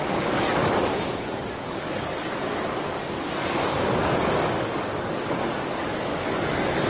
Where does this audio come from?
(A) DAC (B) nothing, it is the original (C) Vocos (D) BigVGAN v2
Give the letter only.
A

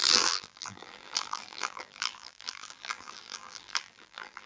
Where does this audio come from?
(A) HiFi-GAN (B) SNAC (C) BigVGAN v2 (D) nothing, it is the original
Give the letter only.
C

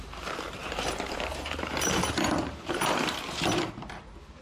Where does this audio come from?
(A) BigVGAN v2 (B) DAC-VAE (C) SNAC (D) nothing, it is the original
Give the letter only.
A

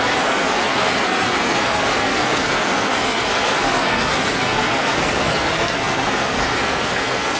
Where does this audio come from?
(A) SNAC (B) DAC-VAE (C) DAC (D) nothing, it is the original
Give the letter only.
A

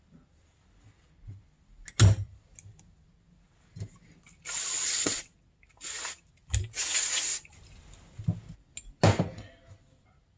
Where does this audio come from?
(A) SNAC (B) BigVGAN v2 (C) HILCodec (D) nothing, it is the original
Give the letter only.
D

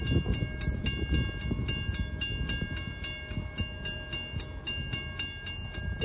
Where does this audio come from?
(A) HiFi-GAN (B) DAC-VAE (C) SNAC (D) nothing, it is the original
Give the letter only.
D